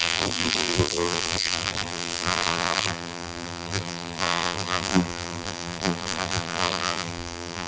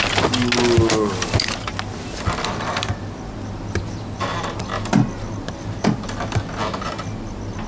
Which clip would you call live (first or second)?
second